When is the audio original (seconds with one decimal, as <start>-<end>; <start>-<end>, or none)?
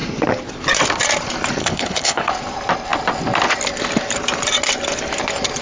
0.0-1.6; 2.3-5.6